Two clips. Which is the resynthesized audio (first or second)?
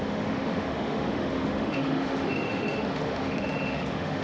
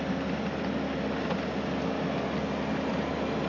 first